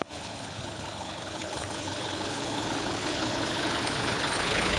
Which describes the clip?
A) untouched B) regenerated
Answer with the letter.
B